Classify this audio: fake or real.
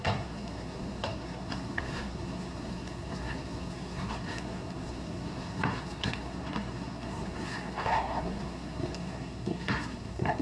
fake